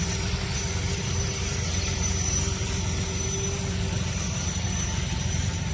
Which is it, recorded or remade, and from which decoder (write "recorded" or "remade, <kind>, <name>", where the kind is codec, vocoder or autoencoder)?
recorded